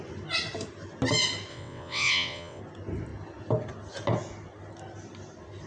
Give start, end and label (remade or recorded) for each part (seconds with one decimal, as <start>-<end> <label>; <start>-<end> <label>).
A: 0.0-1.5 recorded; 1.5-2.6 remade; 2.6-5.7 recorded